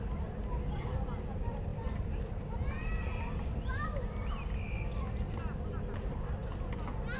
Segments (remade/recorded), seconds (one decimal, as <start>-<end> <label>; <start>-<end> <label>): 0.0-1.7 recorded; 1.7-2.3 remade; 2.3-3.1 recorded; 3.1-4.7 remade; 4.7-7.2 recorded